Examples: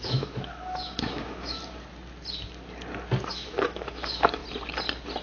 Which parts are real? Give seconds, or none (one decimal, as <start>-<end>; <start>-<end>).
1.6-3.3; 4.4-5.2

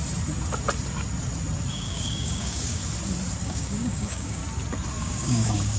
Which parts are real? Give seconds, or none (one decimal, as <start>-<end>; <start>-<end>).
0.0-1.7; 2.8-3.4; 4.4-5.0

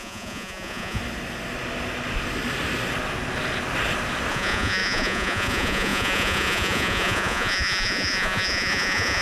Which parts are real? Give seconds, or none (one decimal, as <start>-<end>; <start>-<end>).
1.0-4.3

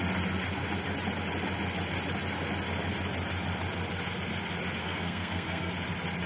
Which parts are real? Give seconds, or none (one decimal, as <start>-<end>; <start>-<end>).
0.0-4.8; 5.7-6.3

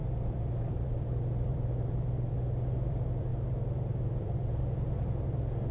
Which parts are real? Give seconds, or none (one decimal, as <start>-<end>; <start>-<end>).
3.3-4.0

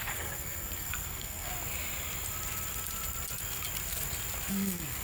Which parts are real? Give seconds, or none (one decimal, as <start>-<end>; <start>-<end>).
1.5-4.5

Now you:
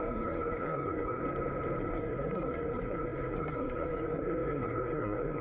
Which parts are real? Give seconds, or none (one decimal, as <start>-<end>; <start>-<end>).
1.2-1.8

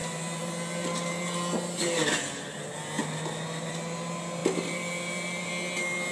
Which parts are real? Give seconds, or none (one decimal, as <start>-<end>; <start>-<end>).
2.6-4.4; 5.5-6.1